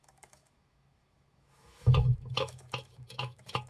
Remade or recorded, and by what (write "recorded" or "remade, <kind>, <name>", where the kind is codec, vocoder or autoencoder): remade, autoencoder, DAC-VAE